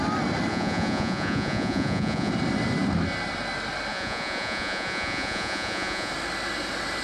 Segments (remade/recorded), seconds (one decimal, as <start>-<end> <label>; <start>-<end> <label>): 0.0-0.5 recorded; 0.5-2.3 remade; 2.3-3.9 recorded; 3.9-6.1 remade; 6.1-7.0 recorded